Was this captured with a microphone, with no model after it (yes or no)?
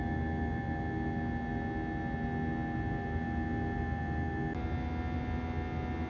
yes